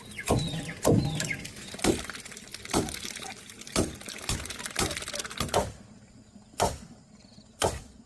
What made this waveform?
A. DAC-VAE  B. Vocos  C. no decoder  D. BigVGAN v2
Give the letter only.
D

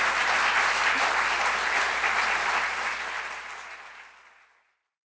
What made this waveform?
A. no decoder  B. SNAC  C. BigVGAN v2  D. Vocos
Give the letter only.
C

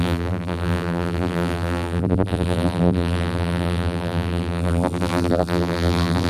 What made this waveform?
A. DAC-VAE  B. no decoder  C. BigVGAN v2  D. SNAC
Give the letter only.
C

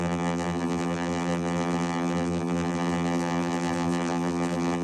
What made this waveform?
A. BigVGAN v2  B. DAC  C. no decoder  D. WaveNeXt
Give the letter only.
A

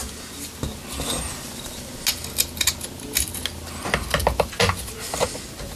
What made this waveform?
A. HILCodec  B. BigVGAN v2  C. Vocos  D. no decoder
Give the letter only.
D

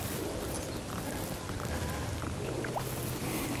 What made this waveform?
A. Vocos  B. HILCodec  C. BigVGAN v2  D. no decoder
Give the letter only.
C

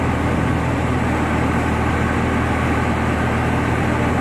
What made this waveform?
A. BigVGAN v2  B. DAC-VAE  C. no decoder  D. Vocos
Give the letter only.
C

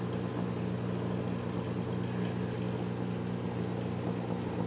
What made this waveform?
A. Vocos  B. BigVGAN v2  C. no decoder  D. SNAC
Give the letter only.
C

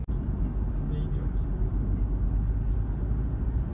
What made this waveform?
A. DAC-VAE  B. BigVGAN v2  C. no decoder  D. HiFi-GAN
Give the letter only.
C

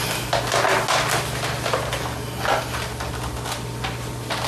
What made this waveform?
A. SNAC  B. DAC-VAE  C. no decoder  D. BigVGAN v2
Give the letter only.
C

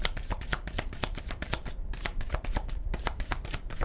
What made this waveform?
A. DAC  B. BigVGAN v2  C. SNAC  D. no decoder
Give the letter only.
B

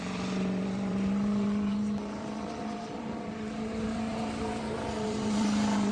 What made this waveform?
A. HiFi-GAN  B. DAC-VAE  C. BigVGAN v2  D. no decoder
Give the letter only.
C